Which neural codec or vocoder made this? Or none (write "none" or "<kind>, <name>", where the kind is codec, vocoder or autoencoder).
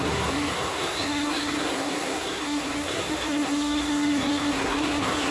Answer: codec, SNAC